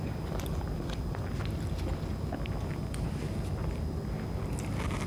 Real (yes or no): yes